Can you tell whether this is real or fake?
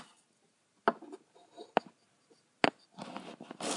real